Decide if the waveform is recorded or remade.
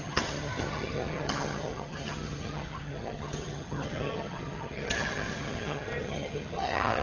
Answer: remade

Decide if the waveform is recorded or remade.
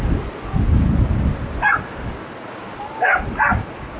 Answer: recorded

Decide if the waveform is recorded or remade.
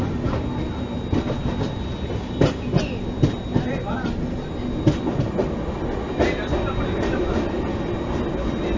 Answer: recorded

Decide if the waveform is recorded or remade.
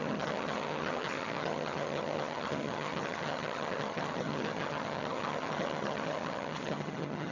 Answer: remade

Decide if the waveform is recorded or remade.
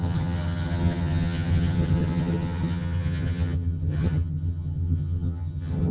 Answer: remade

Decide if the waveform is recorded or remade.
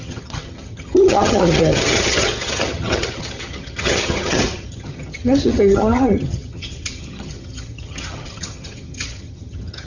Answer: remade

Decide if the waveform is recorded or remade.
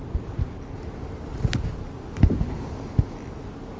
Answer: recorded